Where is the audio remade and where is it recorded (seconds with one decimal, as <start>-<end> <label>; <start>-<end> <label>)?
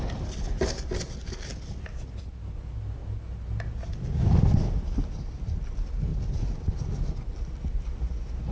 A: 0.0-8.5 recorded